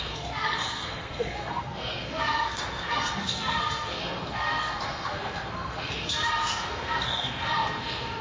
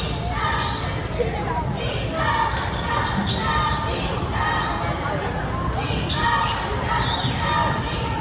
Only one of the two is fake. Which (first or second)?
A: first